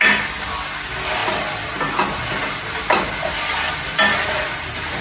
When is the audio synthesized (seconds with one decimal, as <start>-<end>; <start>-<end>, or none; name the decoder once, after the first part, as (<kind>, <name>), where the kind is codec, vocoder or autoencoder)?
none